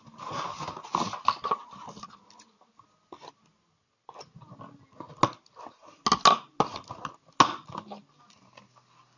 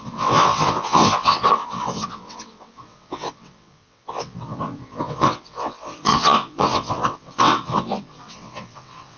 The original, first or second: first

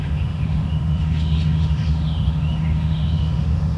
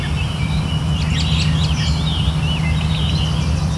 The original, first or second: second